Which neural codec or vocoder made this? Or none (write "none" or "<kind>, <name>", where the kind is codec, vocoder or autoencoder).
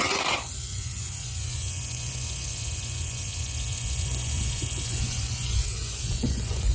vocoder, Vocos